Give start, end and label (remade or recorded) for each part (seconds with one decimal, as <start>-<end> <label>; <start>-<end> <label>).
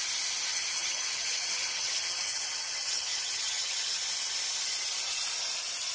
0.0-0.5 recorded; 0.5-4.0 remade; 4.0-5.9 recorded